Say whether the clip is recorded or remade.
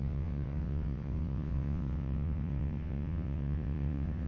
remade